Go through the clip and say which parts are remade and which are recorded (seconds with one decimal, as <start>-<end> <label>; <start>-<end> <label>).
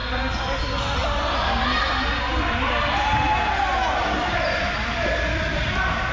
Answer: 0.0-6.1 recorded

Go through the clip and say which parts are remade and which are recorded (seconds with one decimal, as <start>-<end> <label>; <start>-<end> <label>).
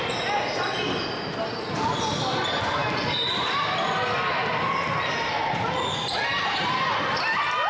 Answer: 0.0-7.7 recorded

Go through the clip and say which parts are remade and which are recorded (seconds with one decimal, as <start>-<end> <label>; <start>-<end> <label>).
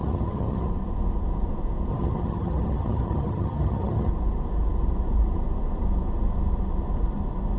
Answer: 0.0-0.7 remade; 0.7-1.9 recorded; 1.9-4.1 remade; 4.1-7.6 recorded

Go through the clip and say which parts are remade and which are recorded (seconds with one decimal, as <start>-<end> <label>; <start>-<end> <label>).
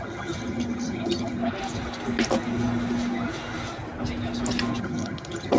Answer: 0.0-1.4 remade; 1.4-4.8 recorded; 4.8-5.6 remade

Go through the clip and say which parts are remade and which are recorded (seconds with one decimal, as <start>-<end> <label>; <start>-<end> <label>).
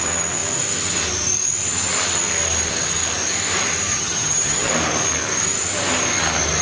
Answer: 0.0-3.9 recorded; 3.9-4.7 remade; 4.7-6.6 recorded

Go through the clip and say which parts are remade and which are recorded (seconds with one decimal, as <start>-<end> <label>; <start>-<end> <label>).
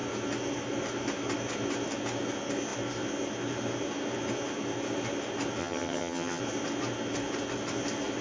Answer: 0.0-5.6 recorded; 5.6-6.4 remade; 6.4-8.2 recorded